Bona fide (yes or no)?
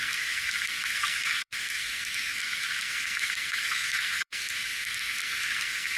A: no